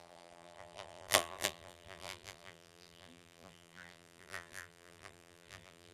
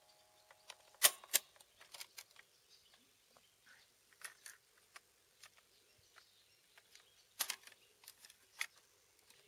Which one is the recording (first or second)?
second